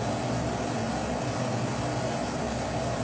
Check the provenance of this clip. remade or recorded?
recorded